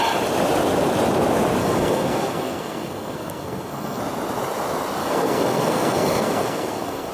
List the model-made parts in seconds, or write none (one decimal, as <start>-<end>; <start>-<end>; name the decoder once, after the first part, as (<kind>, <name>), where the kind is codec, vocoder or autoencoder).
1.6-4.0 (codec, SNAC); 5.0-7.1

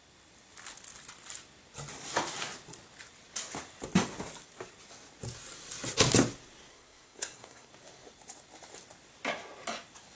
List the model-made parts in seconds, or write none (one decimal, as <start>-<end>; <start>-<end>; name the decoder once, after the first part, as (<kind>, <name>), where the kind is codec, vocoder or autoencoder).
6.7-7.7 (codec, SNAC)

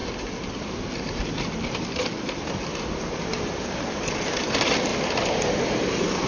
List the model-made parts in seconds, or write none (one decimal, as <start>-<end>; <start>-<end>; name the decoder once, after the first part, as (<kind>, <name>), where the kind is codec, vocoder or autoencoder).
0.0-4.9 (vocoder, BigVGAN v2)

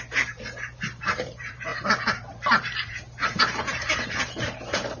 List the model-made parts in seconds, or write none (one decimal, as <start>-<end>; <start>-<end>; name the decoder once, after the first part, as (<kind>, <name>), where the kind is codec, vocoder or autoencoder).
0.0-5.0 (vocoder, BigVGAN v2)

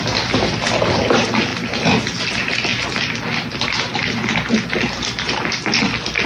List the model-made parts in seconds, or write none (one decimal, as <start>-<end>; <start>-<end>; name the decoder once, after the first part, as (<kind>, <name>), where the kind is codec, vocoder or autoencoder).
none